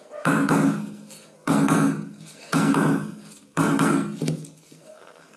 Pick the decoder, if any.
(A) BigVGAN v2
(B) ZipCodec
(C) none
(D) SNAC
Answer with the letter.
D